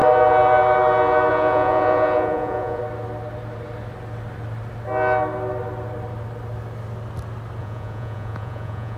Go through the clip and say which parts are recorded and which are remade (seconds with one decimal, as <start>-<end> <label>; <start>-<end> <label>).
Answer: 0.0-1.3 recorded; 1.3-2.8 remade; 2.8-7.6 recorded; 7.6-9.0 remade